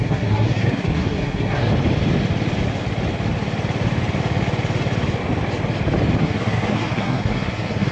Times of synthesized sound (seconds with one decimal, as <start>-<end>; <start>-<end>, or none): 0.0-1.7; 6.2-7.9